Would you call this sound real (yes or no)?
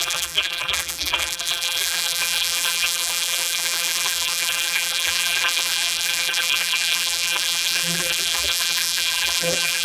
no